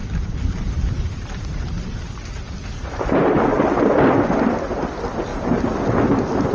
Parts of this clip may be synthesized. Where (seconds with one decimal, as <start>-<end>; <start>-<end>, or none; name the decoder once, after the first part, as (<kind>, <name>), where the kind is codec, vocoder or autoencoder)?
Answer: 0.0-3.4 (vocoder, BigVGAN v2)

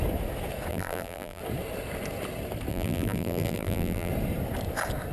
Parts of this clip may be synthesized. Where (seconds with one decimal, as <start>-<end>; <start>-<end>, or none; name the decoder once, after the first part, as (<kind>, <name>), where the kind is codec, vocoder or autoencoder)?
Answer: 0.7-1.4 (vocoder, BigVGAN v2); 2.7-4.1

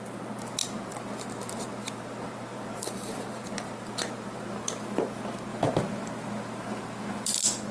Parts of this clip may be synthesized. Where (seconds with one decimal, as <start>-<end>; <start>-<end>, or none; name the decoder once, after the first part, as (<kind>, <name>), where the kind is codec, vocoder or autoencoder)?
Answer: 0.6-5.1 (vocoder, BigVGAN v2); 5.5-7.3

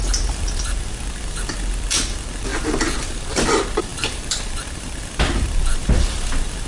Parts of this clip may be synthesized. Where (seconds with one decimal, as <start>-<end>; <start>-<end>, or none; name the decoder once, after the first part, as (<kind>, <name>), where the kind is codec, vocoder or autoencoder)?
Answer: 0.0-6.7 (vocoder, BigVGAN v2)

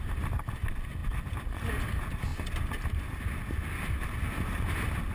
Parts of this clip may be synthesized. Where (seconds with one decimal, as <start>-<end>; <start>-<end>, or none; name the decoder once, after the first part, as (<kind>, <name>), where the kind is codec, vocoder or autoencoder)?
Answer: none

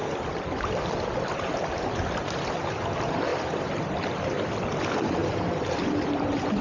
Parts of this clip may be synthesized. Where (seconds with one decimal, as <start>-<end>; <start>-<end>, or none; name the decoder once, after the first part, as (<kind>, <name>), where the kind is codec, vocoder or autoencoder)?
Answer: 3.3-3.8 (vocoder, BigVGAN v2)

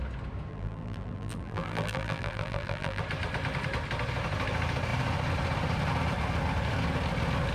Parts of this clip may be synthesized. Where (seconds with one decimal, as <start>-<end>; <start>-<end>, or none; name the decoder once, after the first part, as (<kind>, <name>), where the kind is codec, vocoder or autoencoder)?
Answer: 0.5-3.0 (vocoder, BigVGAN v2)

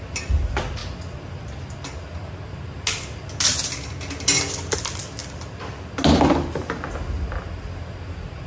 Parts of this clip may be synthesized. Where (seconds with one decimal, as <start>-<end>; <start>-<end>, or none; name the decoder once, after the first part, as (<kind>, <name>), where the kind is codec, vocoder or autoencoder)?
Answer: 5.2-5.7 (vocoder, BigVGAN v2)